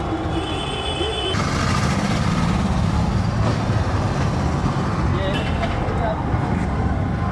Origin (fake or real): real